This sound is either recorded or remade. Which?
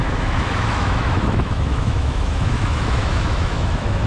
remade